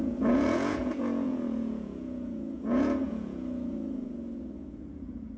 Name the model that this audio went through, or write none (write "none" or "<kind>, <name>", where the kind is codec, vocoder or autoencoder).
vocoder, Vocos